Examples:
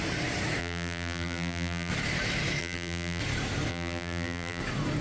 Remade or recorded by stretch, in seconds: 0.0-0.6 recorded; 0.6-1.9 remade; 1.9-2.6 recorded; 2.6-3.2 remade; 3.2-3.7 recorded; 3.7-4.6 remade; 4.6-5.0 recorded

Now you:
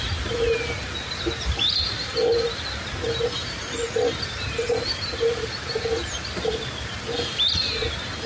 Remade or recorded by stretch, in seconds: 0.0-3.4 recorded; 3.4-7.7 remade; 7.7-8.3 recorded

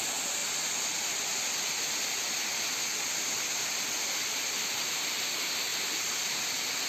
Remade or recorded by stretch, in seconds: 0.0-6.9 recorded

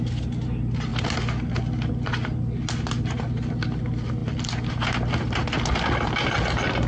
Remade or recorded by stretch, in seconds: 0.0-6.9 recorded

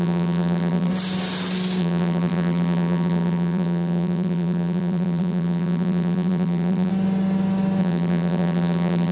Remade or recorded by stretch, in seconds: 0.0-0.9 remade; 0.9-1.8 recorded; 1.8-6.9 remade; 6.9-7.8 recorded; 7.8-9.1 remade

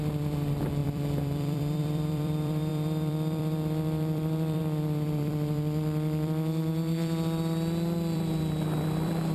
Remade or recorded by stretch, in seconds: 0.0-9.3 remade

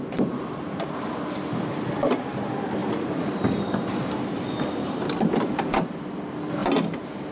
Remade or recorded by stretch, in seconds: 0.0-7.3 recorded

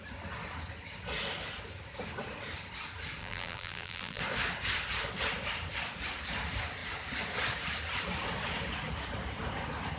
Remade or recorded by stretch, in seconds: 0.0-3.2 recorded; 3.2-4.2 remade; 4.2-10.0 recorded